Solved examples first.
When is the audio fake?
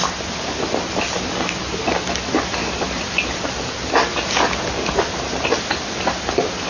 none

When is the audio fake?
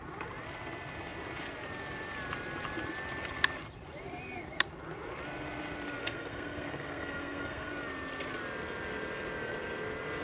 6.0-7.7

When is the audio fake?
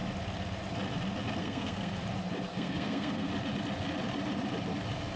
1.4-2.0; 2.5-3.3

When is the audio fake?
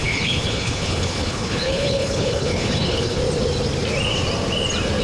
0.0-3.2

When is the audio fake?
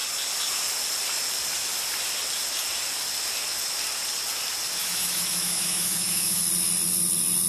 4.8-6.4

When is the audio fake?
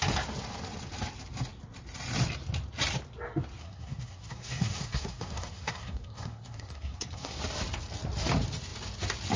3.6-7.4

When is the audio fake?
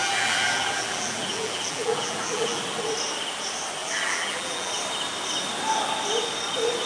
0.0-2.6; 3.8-4.7